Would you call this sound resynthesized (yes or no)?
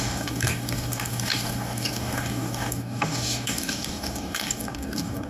yes